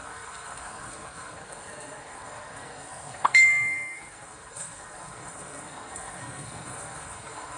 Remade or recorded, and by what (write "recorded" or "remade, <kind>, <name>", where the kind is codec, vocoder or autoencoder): remade, codec, SNAC